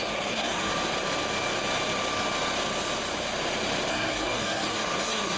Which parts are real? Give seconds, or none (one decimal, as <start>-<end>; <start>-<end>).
0.7-3.9